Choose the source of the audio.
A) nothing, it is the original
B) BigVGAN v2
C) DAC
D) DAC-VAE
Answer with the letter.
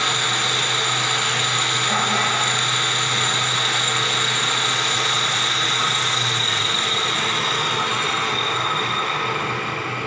A